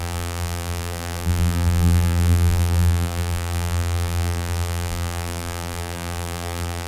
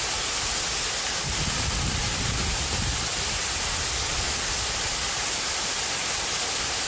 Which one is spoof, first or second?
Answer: first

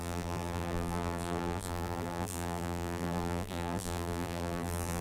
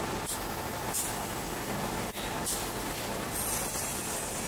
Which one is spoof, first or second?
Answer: first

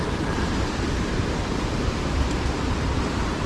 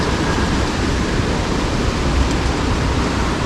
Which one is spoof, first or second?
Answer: first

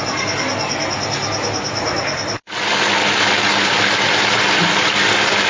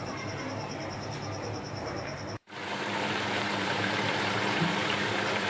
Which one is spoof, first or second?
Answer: second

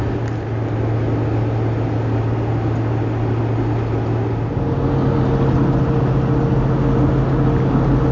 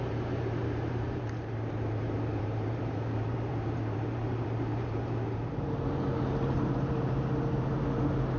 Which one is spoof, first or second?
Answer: second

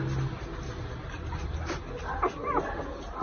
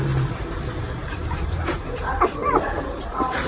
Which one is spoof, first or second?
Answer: second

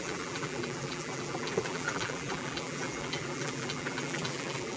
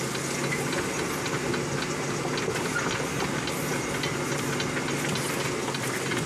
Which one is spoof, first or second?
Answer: first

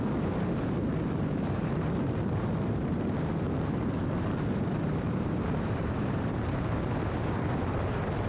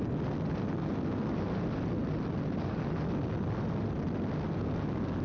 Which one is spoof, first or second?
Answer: first